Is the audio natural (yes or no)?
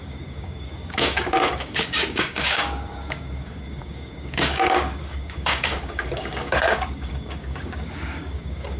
no